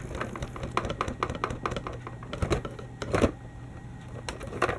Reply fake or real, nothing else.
real